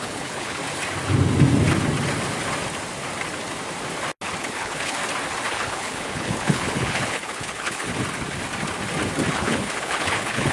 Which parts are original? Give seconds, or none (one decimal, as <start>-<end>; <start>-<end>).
0.6-4.4; 5.0-5.5; 7.9-9.3